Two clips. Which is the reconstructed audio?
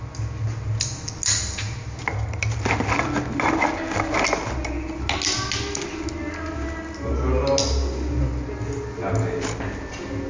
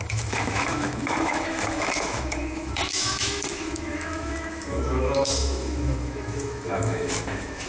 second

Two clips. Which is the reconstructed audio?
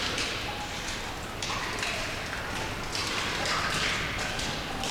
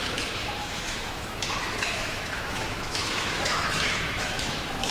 second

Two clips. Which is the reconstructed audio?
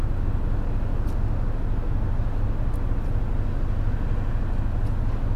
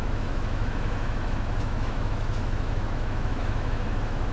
second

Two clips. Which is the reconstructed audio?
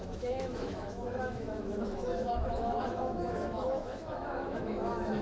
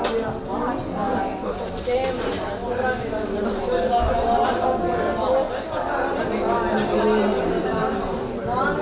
first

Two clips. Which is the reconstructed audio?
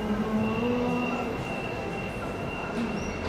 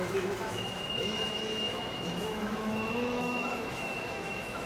second